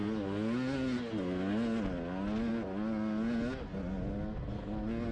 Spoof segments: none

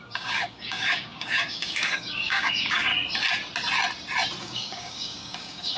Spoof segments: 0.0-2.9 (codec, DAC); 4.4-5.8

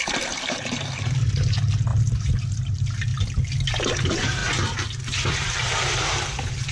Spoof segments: 0.0-3.1 (vocoder, BigVGAN v2); 3.7-4.4; 5.3-6.7

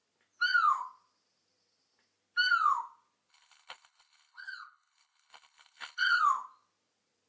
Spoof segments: 3.3-6.2 (codec, HILCodec)